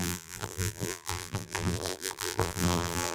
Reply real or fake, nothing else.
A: fake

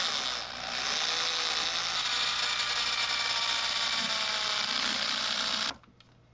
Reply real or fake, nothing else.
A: real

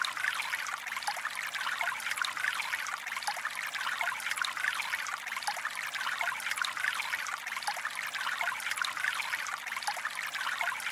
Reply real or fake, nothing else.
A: real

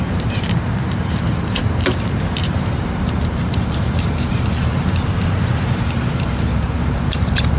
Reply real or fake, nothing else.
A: fake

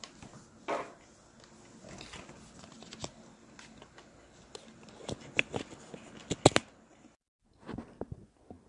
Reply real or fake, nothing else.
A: real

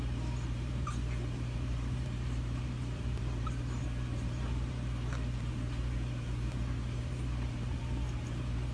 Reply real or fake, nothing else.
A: fake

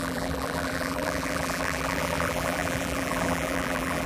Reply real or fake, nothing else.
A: fake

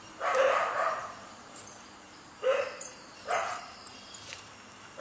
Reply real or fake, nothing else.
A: fake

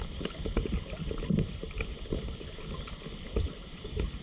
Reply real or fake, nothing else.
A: real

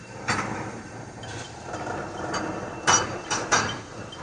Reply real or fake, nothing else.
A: fake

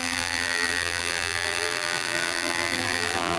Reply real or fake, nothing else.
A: fake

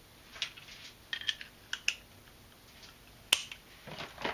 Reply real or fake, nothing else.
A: real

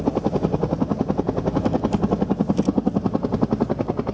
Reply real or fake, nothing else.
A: real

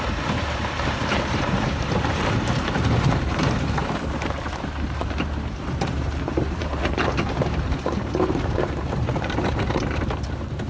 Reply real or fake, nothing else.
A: fake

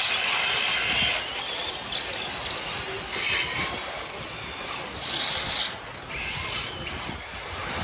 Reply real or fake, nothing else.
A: real